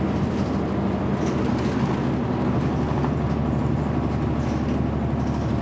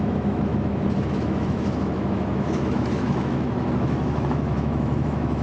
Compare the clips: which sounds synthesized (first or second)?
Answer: second